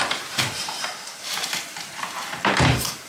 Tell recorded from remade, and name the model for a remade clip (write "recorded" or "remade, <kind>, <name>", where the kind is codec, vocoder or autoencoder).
remade, vocoder, BigVGAN v2